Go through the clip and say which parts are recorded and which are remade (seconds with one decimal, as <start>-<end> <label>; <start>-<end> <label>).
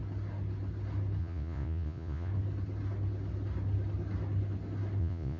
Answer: 0.0-1.2 recorded; 1.2-2.3 remade; 2.3-5.0 recorded; 5.0-5.4 remade